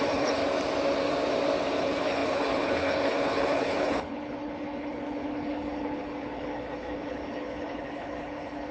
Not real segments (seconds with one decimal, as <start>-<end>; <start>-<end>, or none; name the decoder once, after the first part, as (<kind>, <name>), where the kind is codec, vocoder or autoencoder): 0.0-0.4 (codec, HILCodec); 1.8-8.7

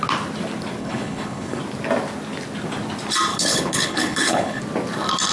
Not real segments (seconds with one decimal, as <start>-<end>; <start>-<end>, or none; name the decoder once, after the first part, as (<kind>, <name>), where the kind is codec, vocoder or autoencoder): 0.8-1.6 (codec, HILCodec); 3.3-4.6